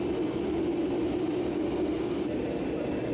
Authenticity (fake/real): real